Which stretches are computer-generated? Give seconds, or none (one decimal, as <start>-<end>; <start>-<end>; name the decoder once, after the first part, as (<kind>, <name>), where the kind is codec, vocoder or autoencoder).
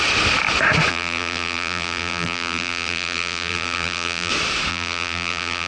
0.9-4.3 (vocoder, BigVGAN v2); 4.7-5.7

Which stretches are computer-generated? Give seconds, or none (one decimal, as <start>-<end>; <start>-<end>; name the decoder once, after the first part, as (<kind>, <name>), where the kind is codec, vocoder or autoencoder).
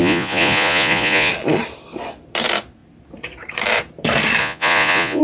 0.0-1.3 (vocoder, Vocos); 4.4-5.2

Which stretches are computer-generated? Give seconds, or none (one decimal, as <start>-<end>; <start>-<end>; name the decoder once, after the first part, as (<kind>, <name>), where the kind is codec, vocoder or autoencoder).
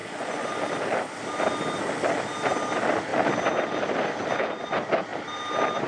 0.0-0.5 (vocoder, Vocos)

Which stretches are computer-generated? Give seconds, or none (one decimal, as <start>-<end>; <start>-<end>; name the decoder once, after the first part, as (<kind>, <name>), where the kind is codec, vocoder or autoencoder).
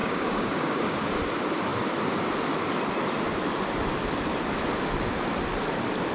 0.0-1.2 (codec, DAC)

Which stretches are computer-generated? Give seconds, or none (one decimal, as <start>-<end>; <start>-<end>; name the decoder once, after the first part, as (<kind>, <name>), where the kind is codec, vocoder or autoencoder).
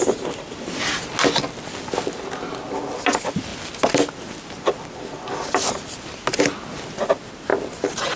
none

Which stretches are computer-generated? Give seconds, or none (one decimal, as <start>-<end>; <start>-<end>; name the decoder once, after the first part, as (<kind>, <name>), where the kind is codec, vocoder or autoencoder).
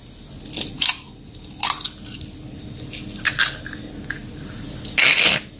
none